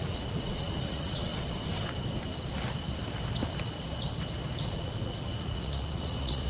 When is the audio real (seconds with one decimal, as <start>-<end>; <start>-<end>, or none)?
1.3-4.7